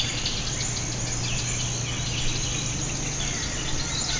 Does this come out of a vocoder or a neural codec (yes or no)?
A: no